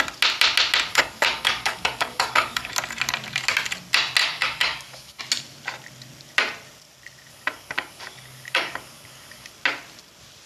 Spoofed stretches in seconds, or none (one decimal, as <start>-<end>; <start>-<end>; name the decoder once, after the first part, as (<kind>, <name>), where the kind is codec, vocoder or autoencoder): 0.9-2.7 (codec, DAC); 4.2-5.2; 7.3-9.5